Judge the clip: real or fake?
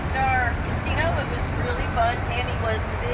real